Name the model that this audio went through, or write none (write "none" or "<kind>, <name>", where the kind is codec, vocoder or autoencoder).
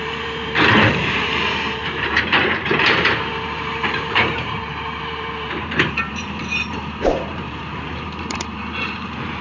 vocoder, BigVGAN v2